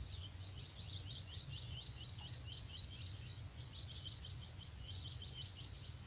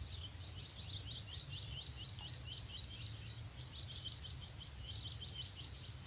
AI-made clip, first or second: first